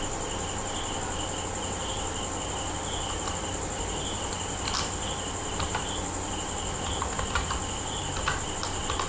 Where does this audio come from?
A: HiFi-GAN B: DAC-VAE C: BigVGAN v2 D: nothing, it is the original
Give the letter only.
D